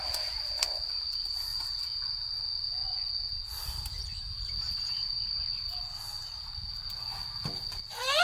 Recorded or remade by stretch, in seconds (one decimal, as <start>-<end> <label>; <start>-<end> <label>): 0.0-8.2 recorded